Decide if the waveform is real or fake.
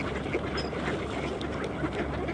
real